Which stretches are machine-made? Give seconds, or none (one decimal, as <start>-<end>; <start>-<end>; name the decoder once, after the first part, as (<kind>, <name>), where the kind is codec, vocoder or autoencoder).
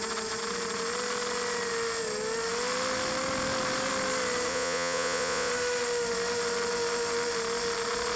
4.5-5.5 (vocoder, Vocos)